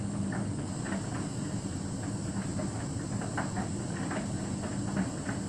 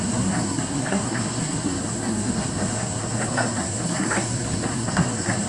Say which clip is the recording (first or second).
first